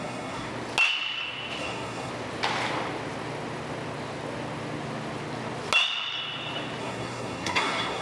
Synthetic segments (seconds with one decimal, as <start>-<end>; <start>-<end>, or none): 0.0-0.5; 1.6-2.1; 6.8-8.0